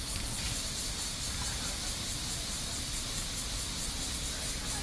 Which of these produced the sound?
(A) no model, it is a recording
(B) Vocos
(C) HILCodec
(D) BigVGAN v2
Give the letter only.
A